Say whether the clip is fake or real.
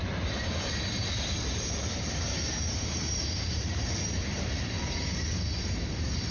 fake